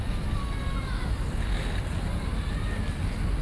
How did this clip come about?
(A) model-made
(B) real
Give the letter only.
B